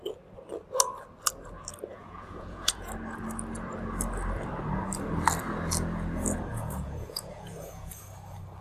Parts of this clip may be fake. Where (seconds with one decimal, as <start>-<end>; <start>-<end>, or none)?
1.9-2.9; 6.5-7.9